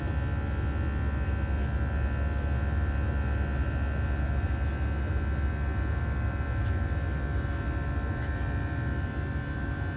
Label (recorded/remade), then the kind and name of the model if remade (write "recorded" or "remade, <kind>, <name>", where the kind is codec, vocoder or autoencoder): recorded